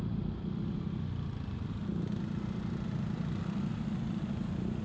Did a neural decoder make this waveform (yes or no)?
no